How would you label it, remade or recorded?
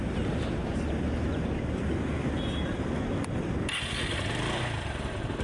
recorded